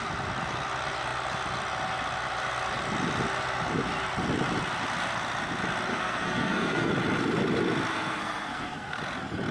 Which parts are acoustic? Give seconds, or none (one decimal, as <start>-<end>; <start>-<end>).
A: 0.0-5.9; 6.9-7.9; 9.0-9.5